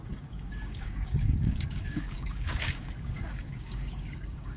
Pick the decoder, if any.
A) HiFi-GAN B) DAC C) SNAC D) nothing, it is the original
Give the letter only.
B